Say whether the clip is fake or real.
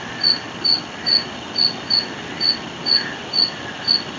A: real